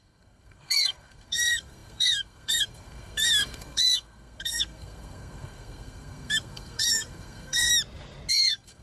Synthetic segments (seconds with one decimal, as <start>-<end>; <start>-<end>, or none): 0.0-7.7; 8.3-8.8